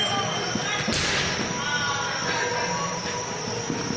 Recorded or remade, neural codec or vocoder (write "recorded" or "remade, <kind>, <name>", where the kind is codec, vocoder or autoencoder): recorded